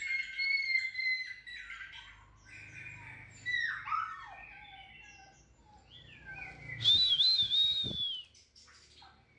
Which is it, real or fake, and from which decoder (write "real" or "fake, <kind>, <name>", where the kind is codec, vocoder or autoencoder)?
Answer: real